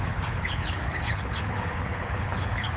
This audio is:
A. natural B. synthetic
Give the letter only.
B